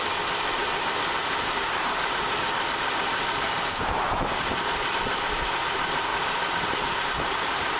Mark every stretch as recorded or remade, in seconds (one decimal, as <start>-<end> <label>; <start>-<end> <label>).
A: 0.0-7.8 recorded